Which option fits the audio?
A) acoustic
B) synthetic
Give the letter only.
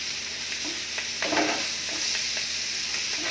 A